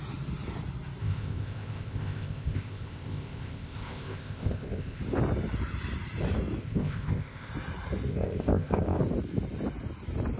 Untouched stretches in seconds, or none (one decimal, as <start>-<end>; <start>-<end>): 0.0-1.0; 5.0-6.6; 7.5-8.1; 9.0-10.4